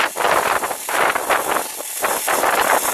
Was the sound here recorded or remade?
recorded